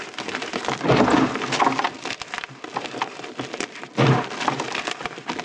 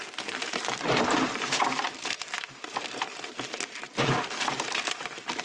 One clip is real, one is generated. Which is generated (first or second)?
second